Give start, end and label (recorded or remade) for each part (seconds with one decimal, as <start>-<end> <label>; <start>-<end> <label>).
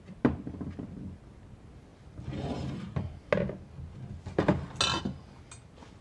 0.0-6.0 recorded